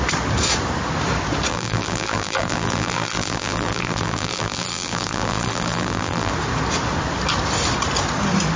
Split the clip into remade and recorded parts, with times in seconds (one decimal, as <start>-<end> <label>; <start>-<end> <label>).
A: 0.0-1.5 recorded; 1.5-6.3 remade; 6.3-8.6 recorded